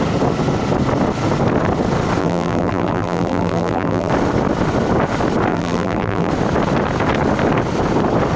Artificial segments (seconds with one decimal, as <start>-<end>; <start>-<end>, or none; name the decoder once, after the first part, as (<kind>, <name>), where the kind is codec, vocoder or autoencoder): 2.2-4.1 (vocoder, BigVGAN v2); 5.5-6.3